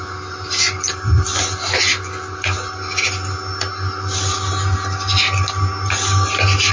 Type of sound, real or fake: real